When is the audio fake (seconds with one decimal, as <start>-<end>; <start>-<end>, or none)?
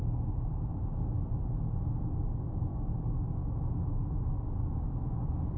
2.7-3.5